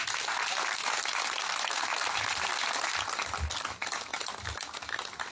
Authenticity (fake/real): real